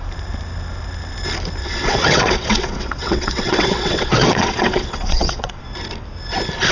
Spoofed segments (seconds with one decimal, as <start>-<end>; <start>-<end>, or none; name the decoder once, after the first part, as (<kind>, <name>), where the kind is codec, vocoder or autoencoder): 1.6-5.6 (vocoder, WaveNeXt)